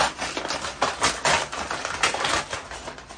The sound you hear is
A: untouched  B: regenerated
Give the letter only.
A